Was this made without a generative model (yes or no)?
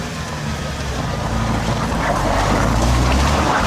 no